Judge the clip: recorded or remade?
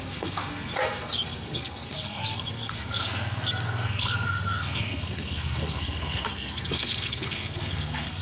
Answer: remade